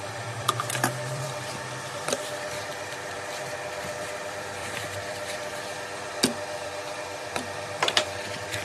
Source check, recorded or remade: remade